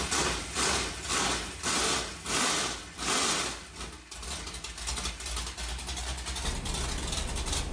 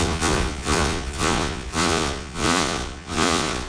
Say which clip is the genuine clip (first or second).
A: first